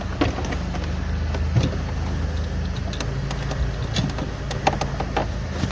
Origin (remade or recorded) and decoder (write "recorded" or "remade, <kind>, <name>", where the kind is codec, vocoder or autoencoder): recorded